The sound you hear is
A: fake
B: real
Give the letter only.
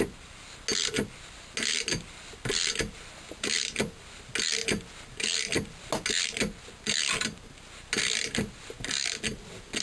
B